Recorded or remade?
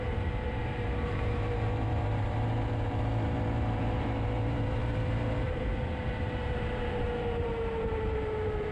remade